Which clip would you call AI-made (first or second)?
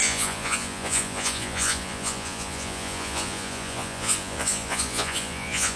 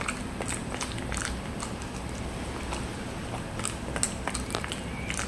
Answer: first